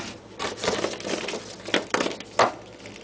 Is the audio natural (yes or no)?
yes